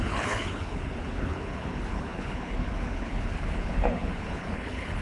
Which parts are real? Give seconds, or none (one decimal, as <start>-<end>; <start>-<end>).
none